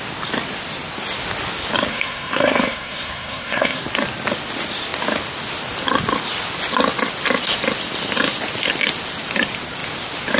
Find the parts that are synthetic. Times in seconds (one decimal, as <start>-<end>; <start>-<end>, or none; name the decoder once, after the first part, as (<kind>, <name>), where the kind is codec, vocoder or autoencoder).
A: 1.9-3.8 (codec, SNAC)